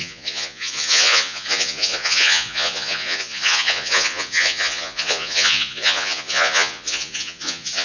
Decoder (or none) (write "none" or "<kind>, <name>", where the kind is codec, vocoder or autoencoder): vocoder, Vocos